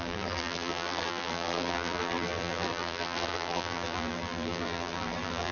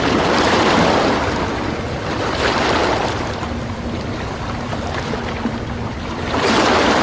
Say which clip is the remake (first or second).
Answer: first